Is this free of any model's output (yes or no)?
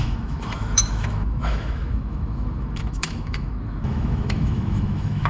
no